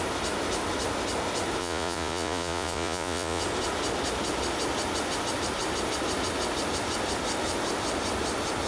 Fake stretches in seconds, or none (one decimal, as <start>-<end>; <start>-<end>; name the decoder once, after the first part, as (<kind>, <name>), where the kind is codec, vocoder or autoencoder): 1.6-3.4 (vocoder, Vocos)